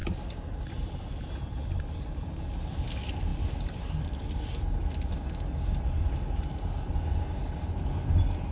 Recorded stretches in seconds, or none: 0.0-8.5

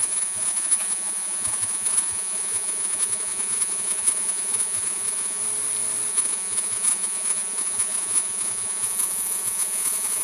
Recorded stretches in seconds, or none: 5.4-6.1

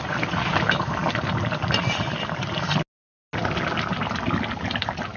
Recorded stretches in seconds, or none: 0.0-5.2